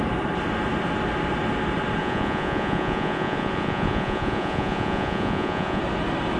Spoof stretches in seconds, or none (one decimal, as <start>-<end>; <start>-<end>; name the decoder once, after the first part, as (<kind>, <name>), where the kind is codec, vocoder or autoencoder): 2.0-5.8 (vocoder, Vocos)